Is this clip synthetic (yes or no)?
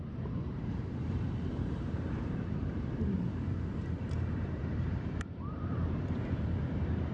yes